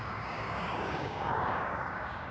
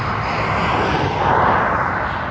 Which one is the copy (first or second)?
first